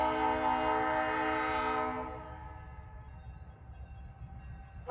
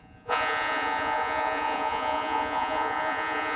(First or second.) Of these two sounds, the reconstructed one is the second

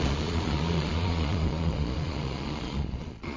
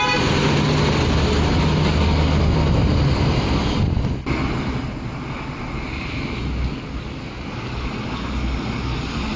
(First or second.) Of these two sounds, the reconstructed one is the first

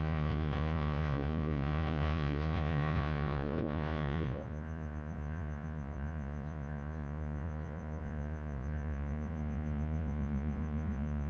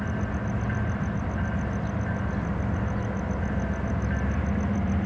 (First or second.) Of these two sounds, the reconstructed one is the first